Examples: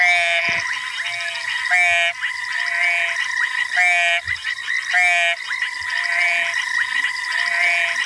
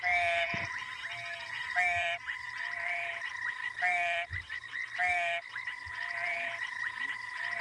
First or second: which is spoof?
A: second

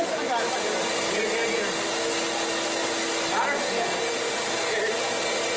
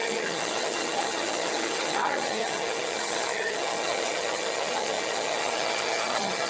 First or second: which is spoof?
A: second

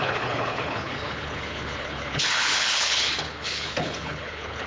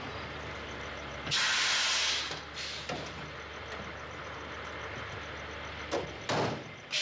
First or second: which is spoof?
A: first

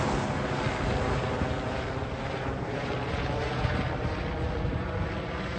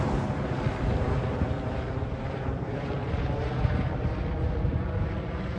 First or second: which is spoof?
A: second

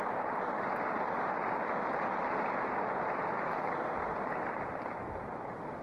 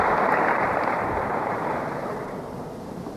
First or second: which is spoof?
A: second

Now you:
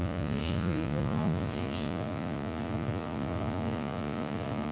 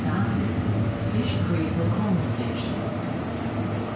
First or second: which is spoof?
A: first